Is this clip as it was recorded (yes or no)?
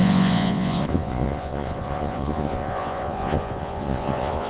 no